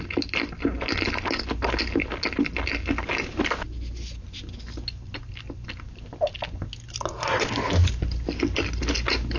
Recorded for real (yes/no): yes